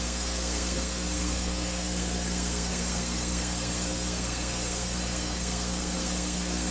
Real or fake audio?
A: fake